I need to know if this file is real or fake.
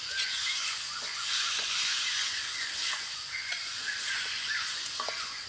fake